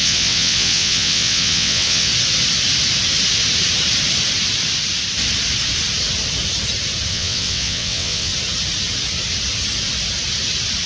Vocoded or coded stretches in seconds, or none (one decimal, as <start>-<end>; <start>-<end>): 0.0-2.1; 7.1-8.3